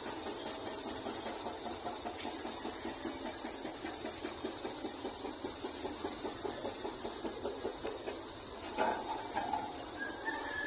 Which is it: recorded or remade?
recorded